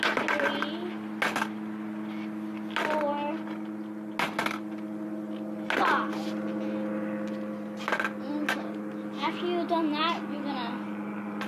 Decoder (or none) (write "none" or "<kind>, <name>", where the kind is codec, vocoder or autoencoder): none